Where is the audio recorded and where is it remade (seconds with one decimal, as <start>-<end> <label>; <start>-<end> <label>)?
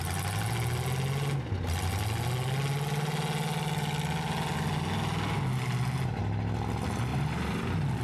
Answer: 0.0-8.0 recorded